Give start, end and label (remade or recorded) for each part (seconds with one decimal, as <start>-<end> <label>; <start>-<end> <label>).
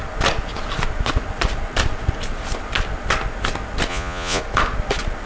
0.0-3.9 recorded; 3.9-4.4 remade; 4.4-5.3 recorded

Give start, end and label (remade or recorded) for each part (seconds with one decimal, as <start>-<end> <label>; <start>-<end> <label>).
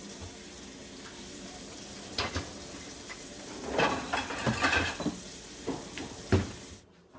0.0-0.8 recorded; 0.8-2.3 remade; 2.3-7.2 recorded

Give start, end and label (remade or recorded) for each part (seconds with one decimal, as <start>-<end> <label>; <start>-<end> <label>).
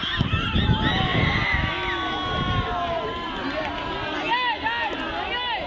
0.0-5.7 recorded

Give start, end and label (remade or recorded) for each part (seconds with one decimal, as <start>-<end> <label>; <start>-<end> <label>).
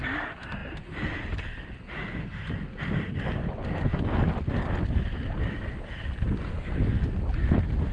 0.0-7.9 recorded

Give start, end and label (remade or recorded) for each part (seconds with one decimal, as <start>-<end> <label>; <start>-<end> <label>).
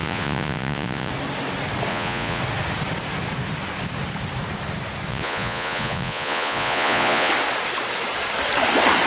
0.0-1.1 remade; 1.1-1.9 recorded; 1.9-2.4 remade; 2.4-5.1 recorded; 5.1-7.3 remade; 7.3-9.1 recorded